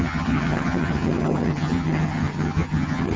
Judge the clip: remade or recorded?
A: remade